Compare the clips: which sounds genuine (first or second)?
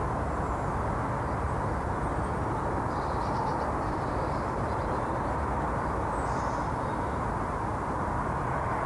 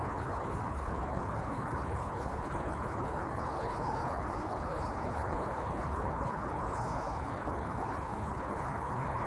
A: first